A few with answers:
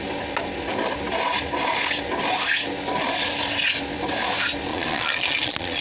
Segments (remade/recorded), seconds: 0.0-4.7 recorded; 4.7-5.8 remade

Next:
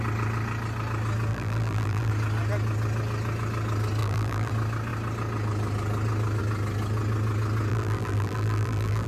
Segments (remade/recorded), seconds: 0.0-1.3 recorded; 1.3-2.1 remade; 2.1-4.0 recorded; 4.0-4.5 remade; 4.5-7.7 recorded; 7.7-9.1 remade

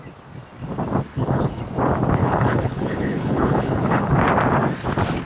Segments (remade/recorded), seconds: 0.0-1.1 recorded; 1.1-1.6 remade; 1.6-2.2 recorded; 2.2-4.1 remade; 4.1-5.2 recorded